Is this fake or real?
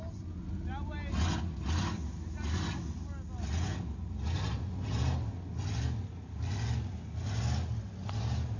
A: real